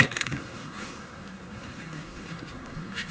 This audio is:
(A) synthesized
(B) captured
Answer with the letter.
A